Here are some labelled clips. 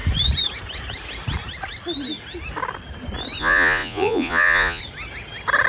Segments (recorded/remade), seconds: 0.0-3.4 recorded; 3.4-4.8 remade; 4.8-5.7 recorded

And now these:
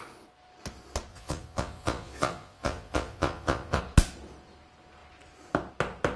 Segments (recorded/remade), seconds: 0.0-1.1 recorded; 1.1-3.8 remade; 3.8-6.2 recorded